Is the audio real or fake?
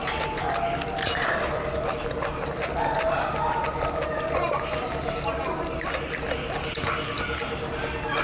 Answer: real